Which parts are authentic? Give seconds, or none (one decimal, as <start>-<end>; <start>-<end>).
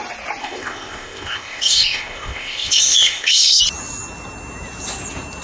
0.0-0.4; 3.6-5.4